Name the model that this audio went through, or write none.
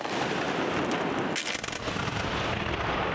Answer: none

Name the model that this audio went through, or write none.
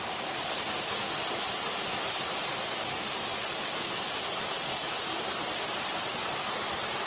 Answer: none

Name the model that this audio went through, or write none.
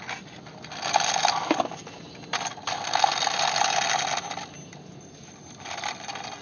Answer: none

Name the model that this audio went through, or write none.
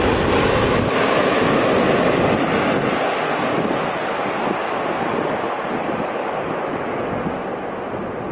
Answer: none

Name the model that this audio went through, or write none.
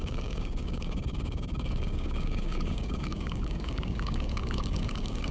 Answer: codec, DAC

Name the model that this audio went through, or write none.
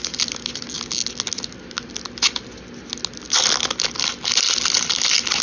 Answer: none